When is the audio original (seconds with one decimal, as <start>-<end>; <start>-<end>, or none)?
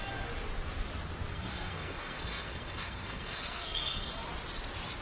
0.0-1.3; 4.1-5.0